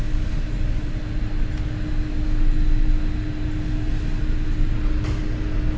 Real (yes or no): yes